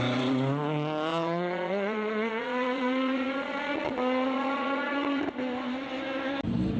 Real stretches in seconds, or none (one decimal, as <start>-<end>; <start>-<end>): 0.0-1.1; 5.2-6.8